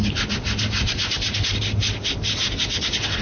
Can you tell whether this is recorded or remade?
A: recorded